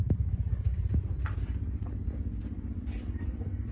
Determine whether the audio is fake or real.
real